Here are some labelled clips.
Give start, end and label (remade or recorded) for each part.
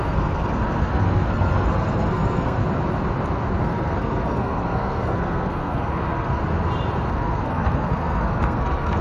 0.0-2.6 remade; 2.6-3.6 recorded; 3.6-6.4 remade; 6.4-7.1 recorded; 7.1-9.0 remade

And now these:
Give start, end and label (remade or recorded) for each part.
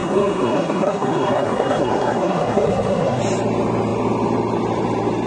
0.0-3.2 remade; 3.2-5.3 recorded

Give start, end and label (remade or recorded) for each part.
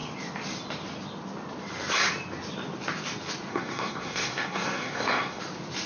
0.0-3.5 recorded; 3.5-5.4 remade; 5.4-5.9 recorded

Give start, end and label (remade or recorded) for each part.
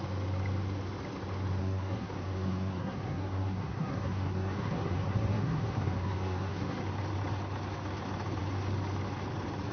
0.0-1.6 recorded; 1.6-6.8 remade; 6.8-9.7 recorded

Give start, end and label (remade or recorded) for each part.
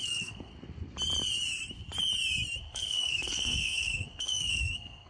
0.0-0.5 remade; 0.5-2.6 recorded; 2.6-5.1 remade